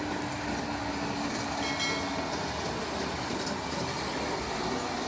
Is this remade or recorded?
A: recorded